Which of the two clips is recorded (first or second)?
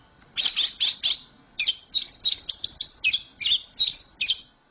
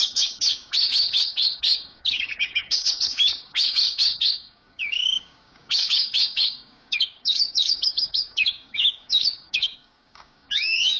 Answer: first